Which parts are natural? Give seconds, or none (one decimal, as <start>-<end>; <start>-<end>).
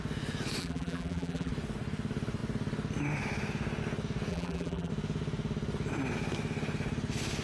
0.0-0.6; 1.5-4.3; 4.9-7.4